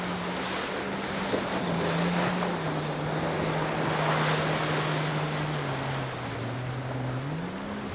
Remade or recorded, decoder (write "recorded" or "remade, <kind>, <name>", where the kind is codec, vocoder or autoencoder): recorded